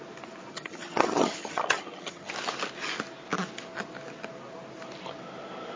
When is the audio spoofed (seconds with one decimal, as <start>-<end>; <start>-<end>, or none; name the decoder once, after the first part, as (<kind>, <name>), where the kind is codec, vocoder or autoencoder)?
0.5-2.3 (vocoder, HiFi-GAN)